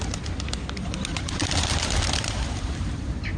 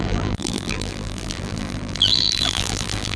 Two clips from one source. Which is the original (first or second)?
first